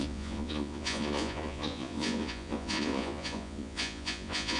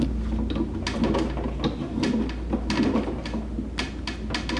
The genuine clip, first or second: second